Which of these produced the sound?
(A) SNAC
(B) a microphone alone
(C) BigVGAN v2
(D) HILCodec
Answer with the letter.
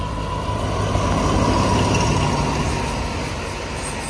B